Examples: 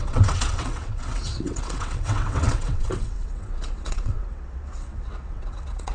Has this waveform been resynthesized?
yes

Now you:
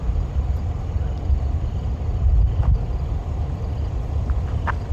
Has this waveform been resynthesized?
no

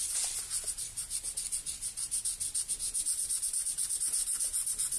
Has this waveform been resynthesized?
no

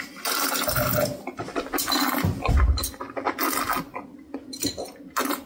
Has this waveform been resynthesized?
no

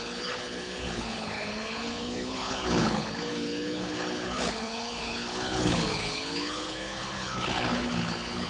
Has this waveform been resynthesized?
yes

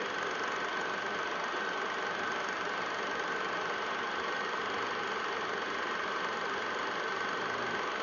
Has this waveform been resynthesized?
no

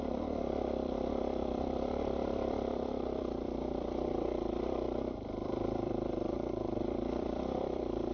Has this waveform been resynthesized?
yes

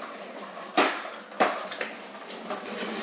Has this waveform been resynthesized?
no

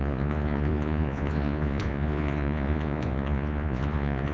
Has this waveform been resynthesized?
yes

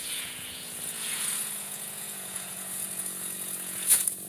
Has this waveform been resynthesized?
yes